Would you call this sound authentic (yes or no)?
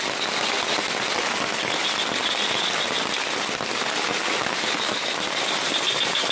yes